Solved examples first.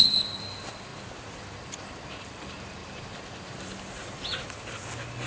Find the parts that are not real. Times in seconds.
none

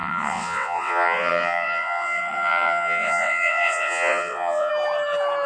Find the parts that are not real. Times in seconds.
0.0-4.7 (vocoder, WaveNeXt)

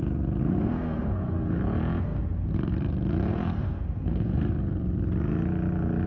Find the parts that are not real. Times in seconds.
0.4-1.6 (codec, SNAC); 3.3-4.5

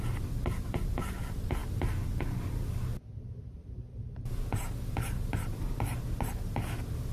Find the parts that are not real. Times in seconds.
none

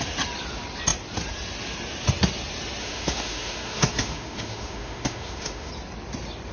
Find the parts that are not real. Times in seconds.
2.8-5.7 (autoencoder, DAC-VAE)